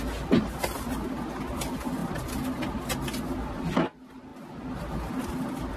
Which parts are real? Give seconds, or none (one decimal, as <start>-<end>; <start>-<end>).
0.0-5.8